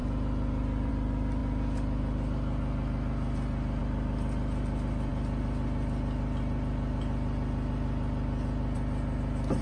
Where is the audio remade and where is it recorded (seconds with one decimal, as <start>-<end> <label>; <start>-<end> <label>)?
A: 0.0-9.6 recorded